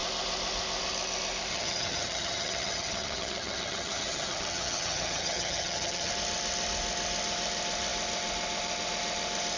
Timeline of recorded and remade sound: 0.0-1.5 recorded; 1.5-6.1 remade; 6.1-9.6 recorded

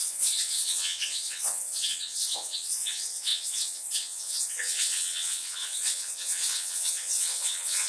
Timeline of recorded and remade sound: 0.0-7.9 remade

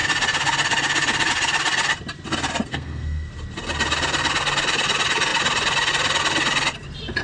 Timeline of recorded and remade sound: 0.0-2.7 recorded; 2.7-3.3 remade; 3.3-7.2 recorded

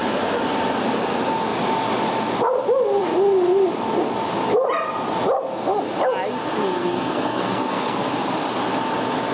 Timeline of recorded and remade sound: 0.0-6.6 recorded; 6.6-8.1 remade; 8.1-9.3 recorded